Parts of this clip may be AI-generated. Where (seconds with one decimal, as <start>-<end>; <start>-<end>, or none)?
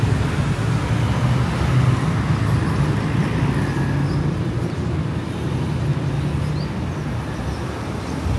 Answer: none